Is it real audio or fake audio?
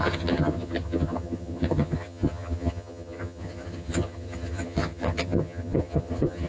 fake